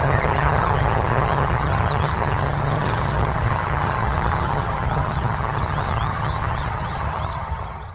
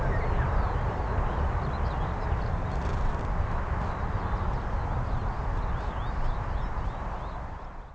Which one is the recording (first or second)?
second